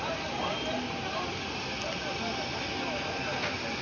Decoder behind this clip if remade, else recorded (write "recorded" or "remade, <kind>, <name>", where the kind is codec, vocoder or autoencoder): recorded